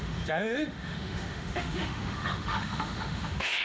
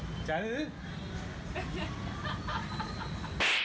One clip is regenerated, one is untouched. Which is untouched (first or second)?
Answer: second